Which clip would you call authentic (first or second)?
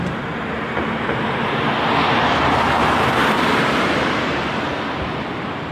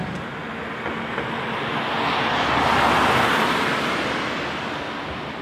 second